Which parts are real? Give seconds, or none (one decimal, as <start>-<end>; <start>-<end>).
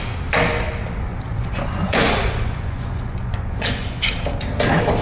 0.0-1.1; 4.1-5.0